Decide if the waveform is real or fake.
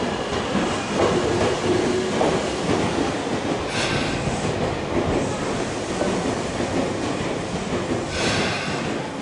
real